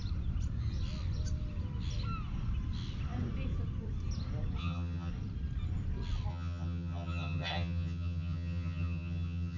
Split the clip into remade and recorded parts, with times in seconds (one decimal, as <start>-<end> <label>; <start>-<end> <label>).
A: 0.0-4.6 recorded; 4.6-5.1 remade; 5.1-6.3 recorded; 6.3-9.6 remade